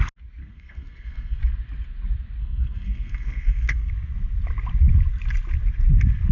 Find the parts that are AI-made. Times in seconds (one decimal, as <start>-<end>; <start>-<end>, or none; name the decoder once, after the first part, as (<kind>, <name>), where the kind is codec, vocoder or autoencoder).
0.4-1.4 (codec, SNAC); 2.4-3.9